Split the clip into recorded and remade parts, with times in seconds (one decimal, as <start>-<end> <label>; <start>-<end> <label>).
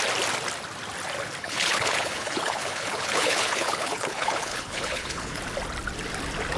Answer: 0.0-1.4 recorded; 1.4-5.4 remade; 5.4-6.6 recorded